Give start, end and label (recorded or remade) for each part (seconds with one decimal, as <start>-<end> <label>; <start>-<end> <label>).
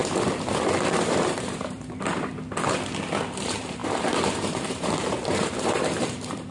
0.0-1.0 recorded; 1.0-2.3 remade; 2.3-3.2 recorded; 3.2-6.5 remade